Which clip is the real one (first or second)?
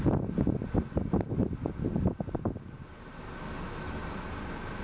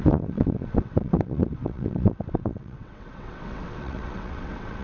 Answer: first